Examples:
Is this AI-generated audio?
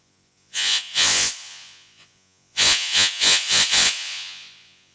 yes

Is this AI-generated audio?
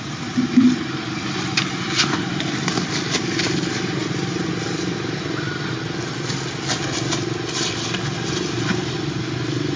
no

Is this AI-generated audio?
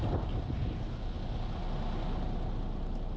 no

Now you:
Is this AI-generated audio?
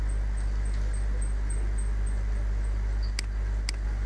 no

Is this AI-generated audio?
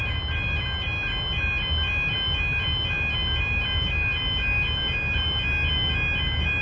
no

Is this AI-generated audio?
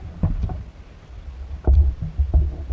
no